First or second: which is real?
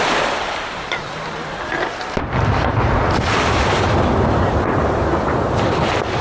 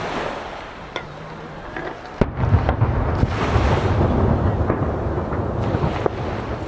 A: second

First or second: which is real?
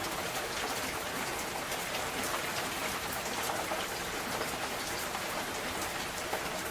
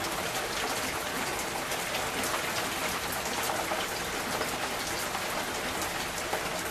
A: second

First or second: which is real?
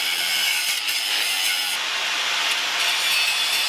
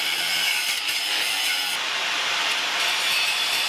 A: first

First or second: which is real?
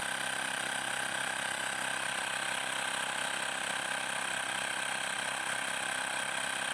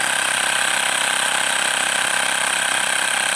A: first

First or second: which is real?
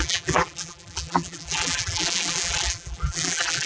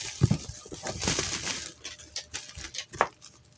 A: second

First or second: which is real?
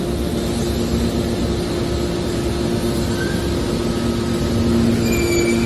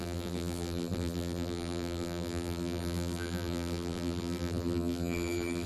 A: first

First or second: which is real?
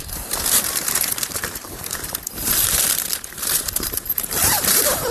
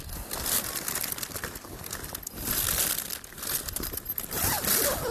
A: second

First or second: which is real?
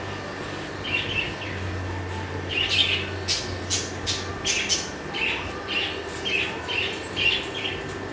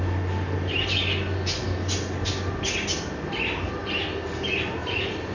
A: first